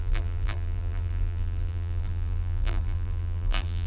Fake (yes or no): yes